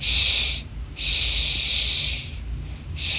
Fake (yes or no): yes